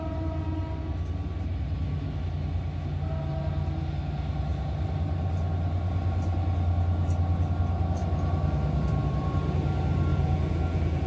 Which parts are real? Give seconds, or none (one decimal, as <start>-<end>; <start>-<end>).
0.0-10.1